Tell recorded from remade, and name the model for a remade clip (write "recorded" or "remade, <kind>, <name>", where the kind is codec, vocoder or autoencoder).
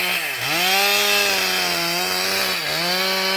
recorded